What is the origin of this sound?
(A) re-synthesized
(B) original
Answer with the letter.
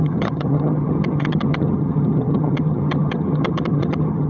A